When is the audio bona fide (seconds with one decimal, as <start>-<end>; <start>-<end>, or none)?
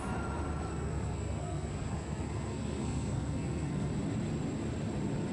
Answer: 0.0-0.7; 3.9-5.3